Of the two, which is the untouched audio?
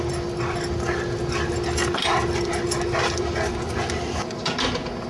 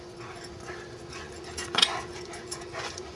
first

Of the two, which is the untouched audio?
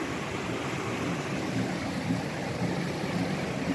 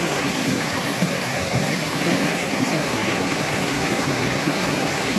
first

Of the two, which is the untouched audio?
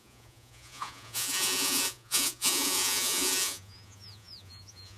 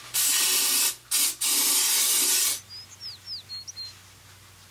second